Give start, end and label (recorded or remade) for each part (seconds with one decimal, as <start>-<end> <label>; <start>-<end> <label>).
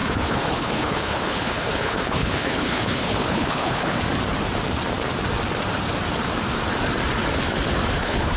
0.0-4.0 remade; 4.0-8.0 recorded; 8.0-8.4 remade